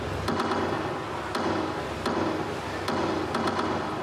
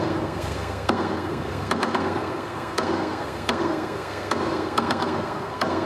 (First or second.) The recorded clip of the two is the first